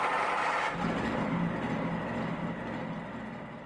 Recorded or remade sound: recorded